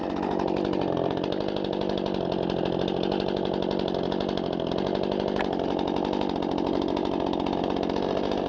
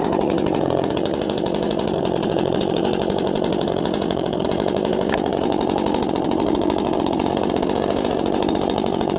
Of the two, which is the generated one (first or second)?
second